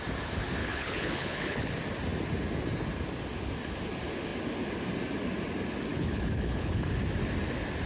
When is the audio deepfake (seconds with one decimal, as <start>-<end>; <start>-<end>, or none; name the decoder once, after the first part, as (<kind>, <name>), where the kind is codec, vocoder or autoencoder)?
0.6-1.7 (codec, HILCodec); 5.9-6.9